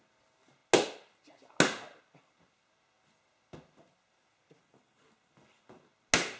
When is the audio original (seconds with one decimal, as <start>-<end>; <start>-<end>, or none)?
0.0-6.4